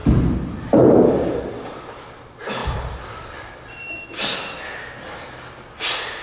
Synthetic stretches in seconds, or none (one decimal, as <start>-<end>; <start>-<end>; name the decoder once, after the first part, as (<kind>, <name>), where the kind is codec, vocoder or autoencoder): 0.0-1.8 (vocoder, BigVGAN v2); 2.6-4.7